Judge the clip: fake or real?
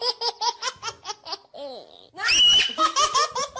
real